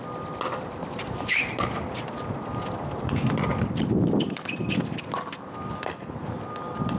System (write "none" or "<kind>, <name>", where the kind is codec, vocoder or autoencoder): none